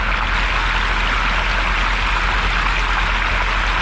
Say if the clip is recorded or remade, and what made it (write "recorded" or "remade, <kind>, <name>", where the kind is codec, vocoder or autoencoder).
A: recorded